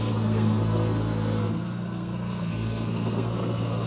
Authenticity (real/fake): fake